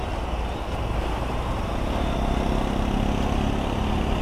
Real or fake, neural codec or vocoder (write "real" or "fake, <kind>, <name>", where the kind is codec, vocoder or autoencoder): real